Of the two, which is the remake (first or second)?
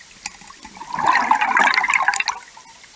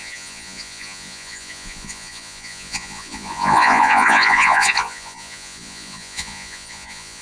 second